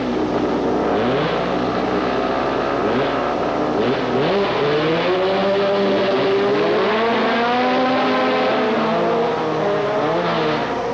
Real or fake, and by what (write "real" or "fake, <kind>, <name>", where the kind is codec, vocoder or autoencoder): real